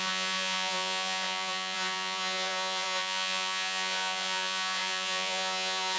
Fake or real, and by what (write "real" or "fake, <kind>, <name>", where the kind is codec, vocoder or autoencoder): fake, vocoder, Vocos